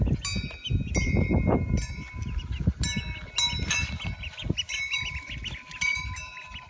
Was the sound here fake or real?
real